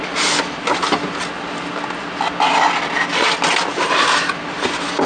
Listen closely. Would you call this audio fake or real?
real